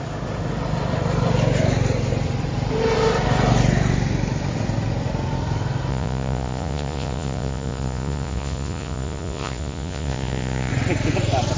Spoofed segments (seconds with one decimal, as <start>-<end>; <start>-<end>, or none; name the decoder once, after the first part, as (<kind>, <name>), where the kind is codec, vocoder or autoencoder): 5.9-10.7 (vocoder, Vocos)